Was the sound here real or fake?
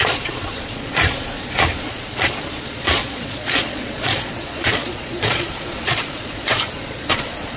fake